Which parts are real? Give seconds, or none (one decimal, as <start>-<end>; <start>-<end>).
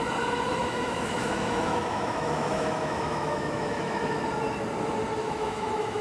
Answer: 0.0-0.6; 4.2-5.2